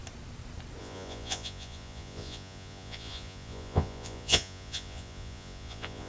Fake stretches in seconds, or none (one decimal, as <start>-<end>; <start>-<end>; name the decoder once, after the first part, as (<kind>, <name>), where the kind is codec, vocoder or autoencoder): 0.8-6.1 (vocoder, Vocos)